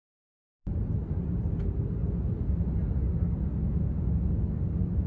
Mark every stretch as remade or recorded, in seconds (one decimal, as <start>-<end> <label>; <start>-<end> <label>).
0.0-1.0 recorded; 1.0-1.6 remade; 1.6-5.1 recorded